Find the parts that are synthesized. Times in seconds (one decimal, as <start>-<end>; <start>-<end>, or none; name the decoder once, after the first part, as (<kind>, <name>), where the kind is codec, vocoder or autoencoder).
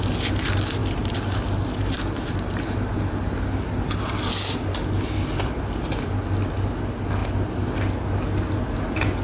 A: 0.8-3.0 (vocoder, BigVGAN v2)